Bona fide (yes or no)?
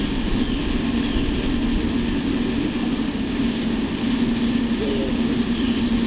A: yes